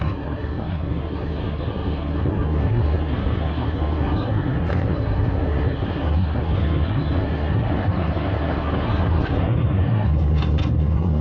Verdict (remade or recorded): remade